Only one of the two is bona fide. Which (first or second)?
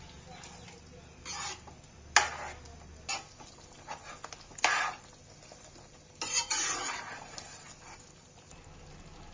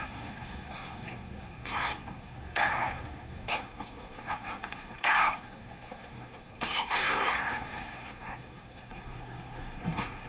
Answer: first